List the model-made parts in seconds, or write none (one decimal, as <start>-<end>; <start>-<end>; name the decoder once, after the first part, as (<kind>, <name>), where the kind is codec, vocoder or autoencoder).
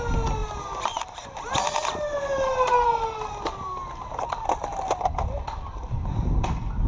none